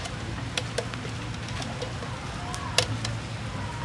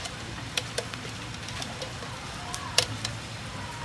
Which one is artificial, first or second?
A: second